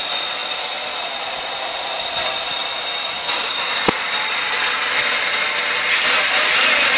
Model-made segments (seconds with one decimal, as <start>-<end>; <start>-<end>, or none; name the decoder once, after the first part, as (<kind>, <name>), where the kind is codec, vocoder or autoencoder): none